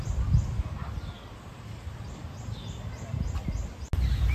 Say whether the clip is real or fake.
real